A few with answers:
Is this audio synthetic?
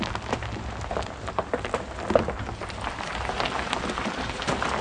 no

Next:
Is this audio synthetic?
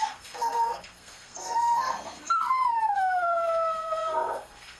yes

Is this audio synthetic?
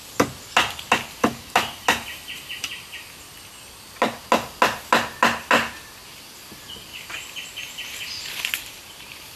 no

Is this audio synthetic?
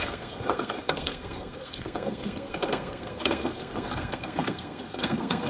yes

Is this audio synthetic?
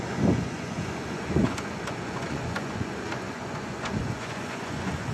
yes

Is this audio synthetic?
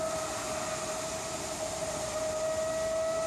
no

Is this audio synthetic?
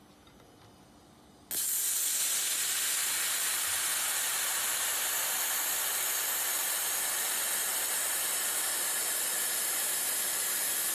no